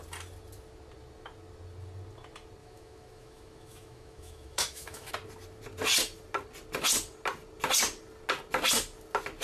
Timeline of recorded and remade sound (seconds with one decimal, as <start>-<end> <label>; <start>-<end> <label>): 0.0-2.6 recorded; 2.6-5.1 remade; 5.1-9.4 recorded